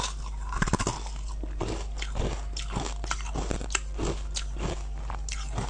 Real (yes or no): yes